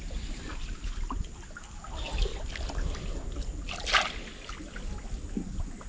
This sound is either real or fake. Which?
real